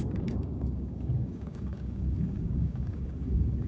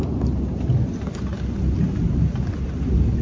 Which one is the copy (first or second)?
first